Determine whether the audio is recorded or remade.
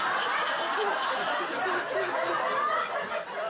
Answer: recorded